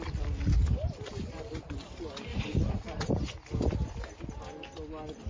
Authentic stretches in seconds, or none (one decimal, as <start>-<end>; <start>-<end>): 0.0-0.6; 1.6-2.3; 3.1-5.3